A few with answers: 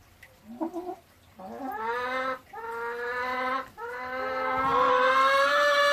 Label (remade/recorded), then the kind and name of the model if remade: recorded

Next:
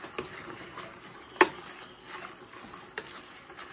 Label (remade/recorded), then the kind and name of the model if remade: recorded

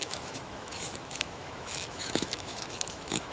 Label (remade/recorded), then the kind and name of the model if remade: remade, autoencoder, DAC-VAE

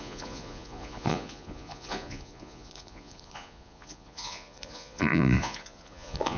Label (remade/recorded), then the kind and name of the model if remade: remade, vocoder, Vocos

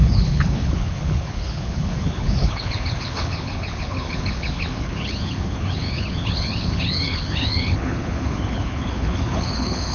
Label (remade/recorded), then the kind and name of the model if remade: remade, codec, HILCodec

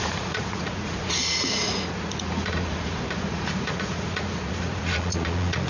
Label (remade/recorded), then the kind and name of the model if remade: remade, vocoder, Vocos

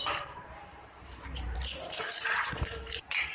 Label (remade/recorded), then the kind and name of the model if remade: remade, vocoder, BigVGAN v2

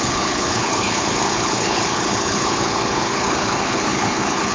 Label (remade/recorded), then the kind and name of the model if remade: remade, codec, HILCodec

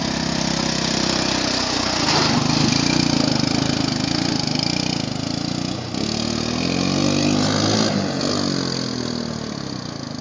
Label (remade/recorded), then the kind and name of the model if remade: recorded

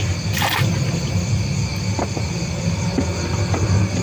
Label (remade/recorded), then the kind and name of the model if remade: recorded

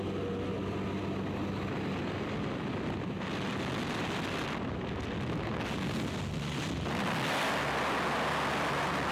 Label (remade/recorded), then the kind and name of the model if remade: recorded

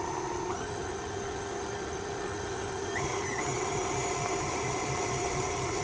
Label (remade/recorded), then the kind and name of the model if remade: recorded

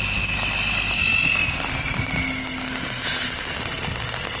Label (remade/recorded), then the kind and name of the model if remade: recorded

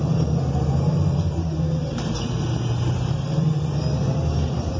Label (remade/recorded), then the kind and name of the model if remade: remade, vocoder, BigVGAN v2